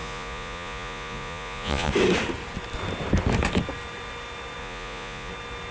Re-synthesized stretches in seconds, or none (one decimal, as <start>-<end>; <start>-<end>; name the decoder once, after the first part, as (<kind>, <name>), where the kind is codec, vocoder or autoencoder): 0.0-1.9 (vocoder, Vocos); 4.6-5.3